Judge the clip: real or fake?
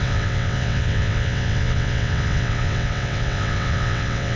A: fake